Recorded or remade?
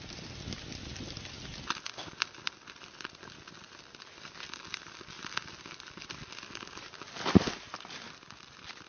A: recorded